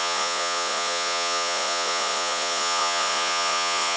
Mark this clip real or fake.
fake